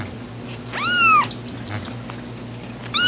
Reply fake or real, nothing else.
real